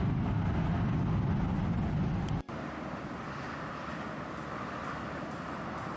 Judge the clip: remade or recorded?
recorded